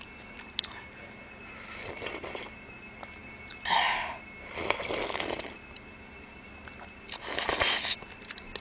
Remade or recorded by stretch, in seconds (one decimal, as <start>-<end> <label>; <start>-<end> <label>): 0.0-8.6 recorded